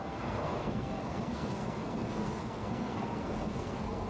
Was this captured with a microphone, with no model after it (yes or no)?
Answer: no